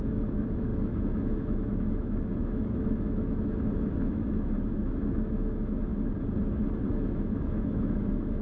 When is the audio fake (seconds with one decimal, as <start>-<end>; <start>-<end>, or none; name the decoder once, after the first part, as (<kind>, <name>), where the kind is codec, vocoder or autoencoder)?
0.0-5.9 (autoencoder, DAC-VAE); 6.9-8.4

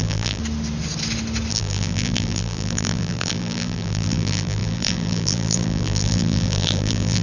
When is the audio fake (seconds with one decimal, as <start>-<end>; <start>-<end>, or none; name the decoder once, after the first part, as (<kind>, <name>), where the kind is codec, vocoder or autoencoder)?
0.0-0.4 (vocoder, BigVGAN v2); 1.5-7.2

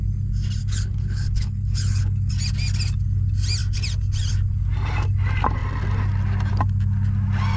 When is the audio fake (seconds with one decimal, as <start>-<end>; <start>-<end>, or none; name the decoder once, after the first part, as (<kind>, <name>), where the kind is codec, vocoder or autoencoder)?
0.6-2.3 (codec, HILCodec)